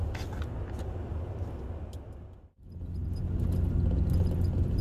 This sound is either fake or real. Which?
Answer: real